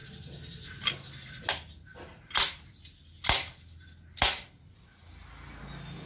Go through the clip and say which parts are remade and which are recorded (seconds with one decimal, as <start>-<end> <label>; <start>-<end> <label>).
0.0-6.1 recorded